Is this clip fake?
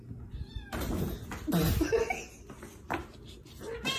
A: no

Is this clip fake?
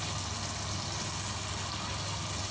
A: no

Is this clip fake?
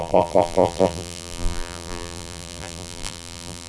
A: yes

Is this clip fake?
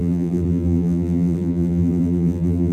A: yes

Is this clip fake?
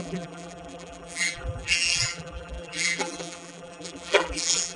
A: yes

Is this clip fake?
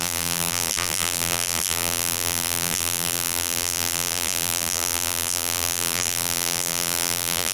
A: yes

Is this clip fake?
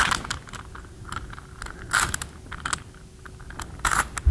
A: no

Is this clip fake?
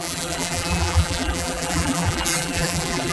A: yes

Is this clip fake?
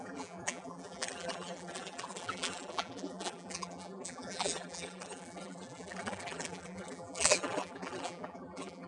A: yes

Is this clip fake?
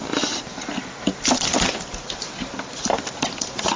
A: yes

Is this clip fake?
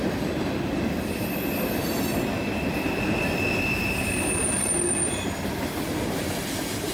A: no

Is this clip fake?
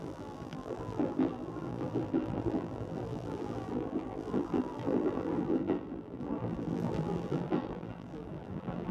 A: yes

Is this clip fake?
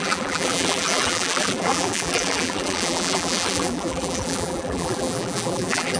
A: yes